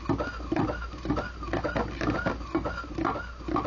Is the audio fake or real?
real